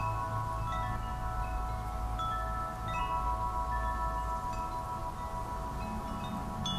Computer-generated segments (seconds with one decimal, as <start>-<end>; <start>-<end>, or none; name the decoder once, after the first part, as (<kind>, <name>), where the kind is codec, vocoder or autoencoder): none